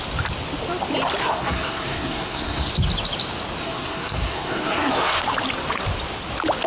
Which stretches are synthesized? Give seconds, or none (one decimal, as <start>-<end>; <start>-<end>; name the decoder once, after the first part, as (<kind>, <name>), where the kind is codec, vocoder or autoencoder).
1.2-2.7 (codec, SNAC); 3.6-5.2